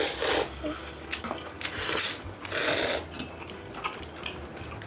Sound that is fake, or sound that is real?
real